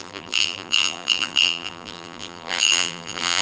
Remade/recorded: remade